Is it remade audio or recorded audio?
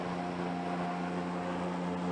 recorded